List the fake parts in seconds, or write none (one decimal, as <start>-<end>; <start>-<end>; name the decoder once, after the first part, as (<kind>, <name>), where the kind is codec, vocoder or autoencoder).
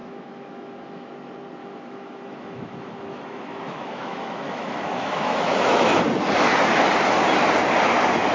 0.0-1.1 (autoencoder, DAC-VAE); 1.6-6.0